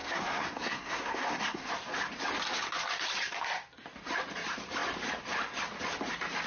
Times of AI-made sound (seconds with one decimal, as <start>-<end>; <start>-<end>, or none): 0.0-1.7